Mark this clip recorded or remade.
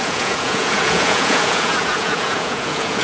remade